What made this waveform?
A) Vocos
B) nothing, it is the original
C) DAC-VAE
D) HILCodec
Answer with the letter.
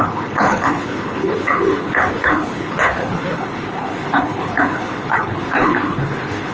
D